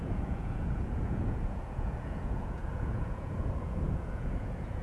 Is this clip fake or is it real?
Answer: fake